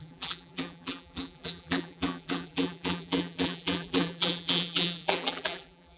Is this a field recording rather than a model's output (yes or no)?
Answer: no